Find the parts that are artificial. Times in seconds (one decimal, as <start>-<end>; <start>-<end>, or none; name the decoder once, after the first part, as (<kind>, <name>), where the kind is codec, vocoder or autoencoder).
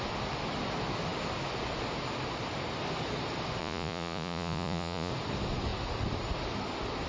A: 3.6-5.1 (vocoder, Vocos)